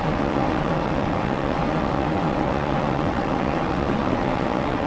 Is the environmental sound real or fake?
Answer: fake